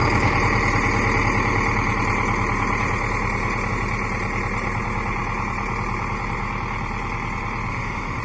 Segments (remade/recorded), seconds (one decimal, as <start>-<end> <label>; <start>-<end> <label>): 0.0-7.7 recorded; 7.7-8.2 remade